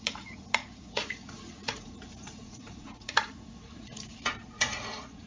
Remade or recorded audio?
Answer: remade